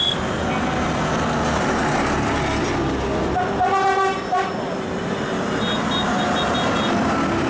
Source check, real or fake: real